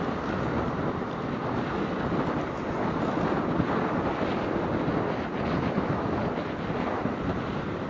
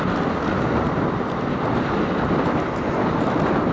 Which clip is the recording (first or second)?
second